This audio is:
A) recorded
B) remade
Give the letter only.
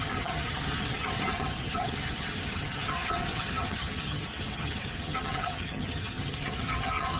B